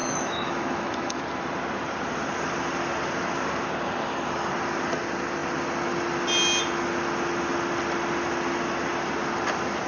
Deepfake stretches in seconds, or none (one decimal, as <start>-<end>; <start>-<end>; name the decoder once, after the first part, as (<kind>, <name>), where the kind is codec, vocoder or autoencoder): 0.0-1.2 (autoencoder, DAC-VAE)